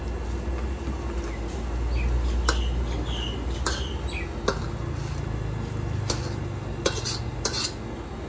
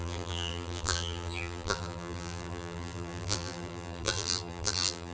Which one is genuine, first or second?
first